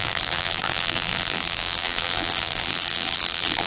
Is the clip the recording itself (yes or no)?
no